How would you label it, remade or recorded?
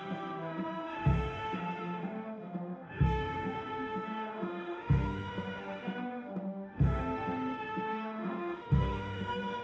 remade